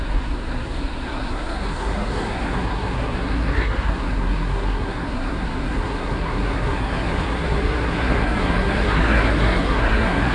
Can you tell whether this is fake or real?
fake